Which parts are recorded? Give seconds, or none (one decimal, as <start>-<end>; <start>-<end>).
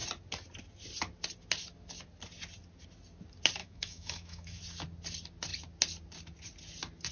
0.0-3.6; 4.6-7.1